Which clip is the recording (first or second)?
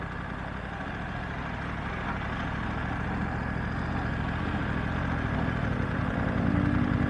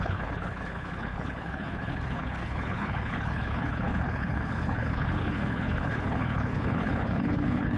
first